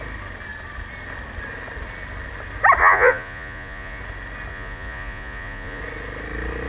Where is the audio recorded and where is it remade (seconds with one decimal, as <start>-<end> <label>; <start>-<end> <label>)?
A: 0.0-2.8 recorded; 2.8-4.0 remade; 4.0-4.5 recorded; 4.5-5.8 remade; 5.8-6.7 recorded